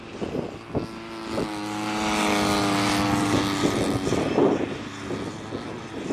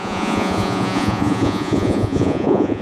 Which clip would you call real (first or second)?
first